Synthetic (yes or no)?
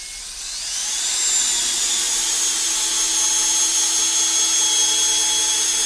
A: no